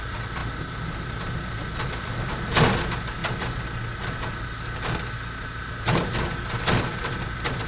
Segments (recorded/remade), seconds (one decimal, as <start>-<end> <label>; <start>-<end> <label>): 0.0-7.7 recorded